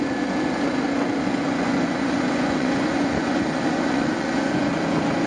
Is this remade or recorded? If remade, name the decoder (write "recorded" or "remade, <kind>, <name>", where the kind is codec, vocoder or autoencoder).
remade, vocoder, Vocos